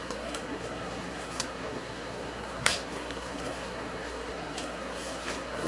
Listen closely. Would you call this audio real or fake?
fake